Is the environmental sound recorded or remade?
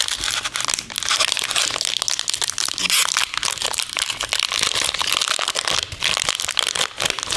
recorded